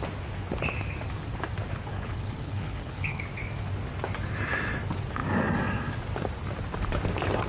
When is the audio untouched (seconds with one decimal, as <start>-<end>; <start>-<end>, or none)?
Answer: 0.0-1.9; 3.2-7.5